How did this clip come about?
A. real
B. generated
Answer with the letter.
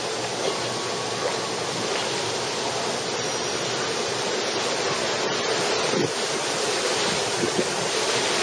A